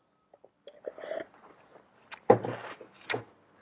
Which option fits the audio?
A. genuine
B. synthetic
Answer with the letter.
A